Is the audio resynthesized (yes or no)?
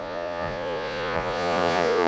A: yes